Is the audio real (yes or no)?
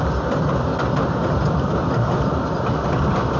yes